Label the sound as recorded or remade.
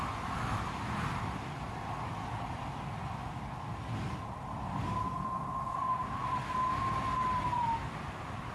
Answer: recorded